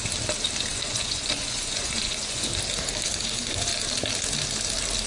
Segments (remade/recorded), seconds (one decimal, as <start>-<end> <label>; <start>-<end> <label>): 0.0-0.7 recorded; 0.7-2.5 remade; 2.5-3.2 recorded; 3.2-3.7 remade; 3.7-5.1 recorded